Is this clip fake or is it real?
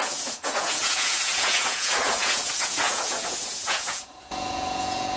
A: fake